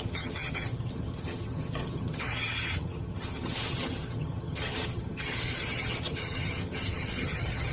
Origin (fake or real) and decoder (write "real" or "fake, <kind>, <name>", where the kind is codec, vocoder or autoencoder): fake, vocoder, HiFi-GAN